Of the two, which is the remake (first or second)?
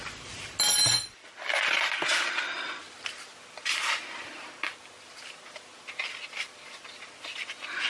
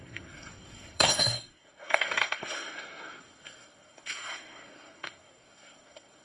second